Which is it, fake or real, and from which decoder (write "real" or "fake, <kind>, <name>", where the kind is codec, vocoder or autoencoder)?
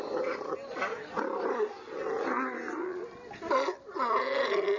real